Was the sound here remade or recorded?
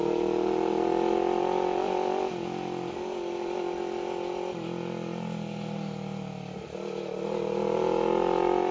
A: recorded